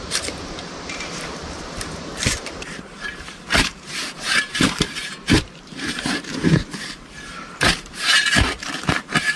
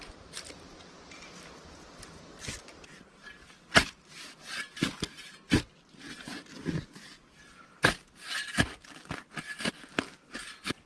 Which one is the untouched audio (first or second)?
second